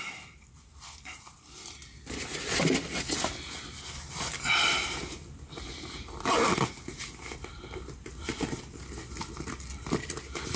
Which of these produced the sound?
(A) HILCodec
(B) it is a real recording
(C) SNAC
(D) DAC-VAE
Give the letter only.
B